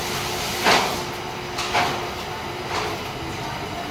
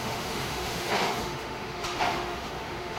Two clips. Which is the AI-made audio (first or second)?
second